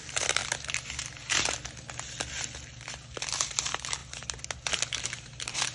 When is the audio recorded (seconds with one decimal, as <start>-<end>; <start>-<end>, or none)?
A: 0.4-3.4; 4.0-5.0